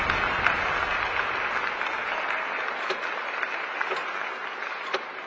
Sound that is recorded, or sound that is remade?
recorded